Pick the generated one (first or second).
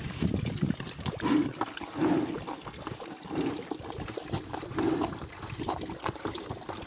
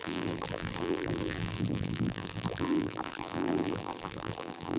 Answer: second